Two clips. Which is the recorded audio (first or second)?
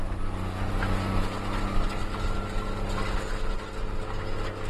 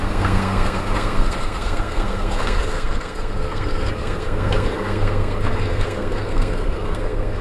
first